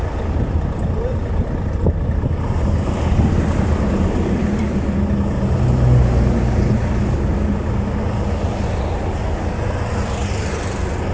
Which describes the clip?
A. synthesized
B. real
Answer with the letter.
B